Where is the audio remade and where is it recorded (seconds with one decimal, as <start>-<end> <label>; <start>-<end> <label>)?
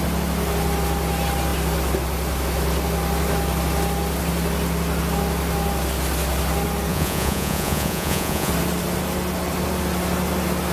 0.0-6.9 recorded; 6.9-8.5 remade; 8.5-10.7 recorded